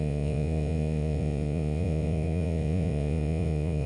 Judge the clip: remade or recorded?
remade